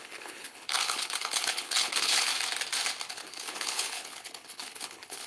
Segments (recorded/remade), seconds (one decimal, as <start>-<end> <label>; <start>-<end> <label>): 0.0-2.3 remade; 2.3-3.1 recorded; 3.1-5.3 remade